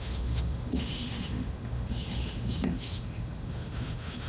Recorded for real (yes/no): no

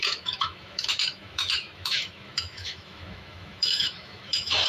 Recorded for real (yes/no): no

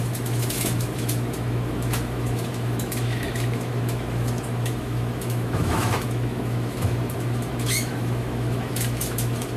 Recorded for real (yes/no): no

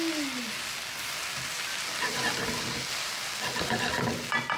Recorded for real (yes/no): yes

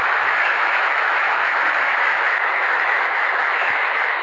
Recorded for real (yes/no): no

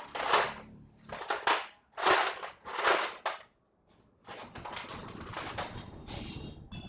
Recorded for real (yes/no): yes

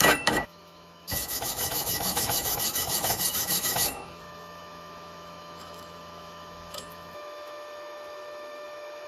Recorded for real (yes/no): no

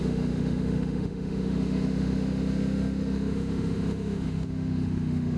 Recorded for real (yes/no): no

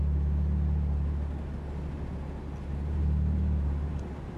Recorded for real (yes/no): yes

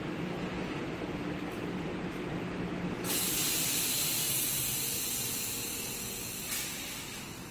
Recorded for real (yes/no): yes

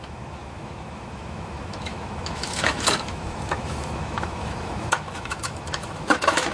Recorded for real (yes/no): no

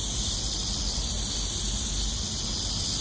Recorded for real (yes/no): yes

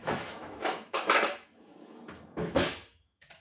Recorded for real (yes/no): no